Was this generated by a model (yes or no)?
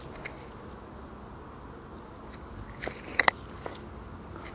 no